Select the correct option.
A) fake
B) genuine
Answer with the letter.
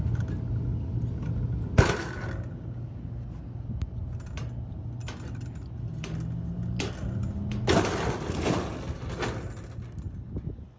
B